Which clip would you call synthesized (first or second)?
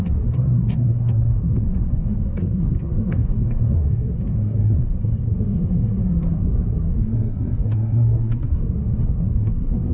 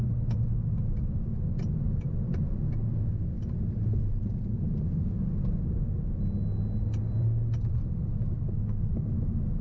first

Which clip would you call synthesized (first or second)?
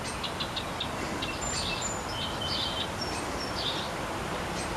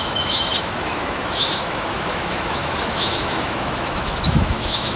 second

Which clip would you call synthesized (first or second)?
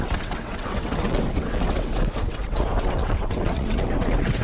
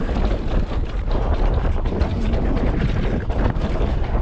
first